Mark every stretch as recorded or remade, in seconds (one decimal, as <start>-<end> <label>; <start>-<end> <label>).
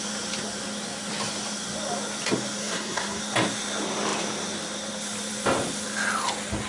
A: 0.0-2.6 recorded; 2.6-3.2 remade; 3.2-6.7 recorded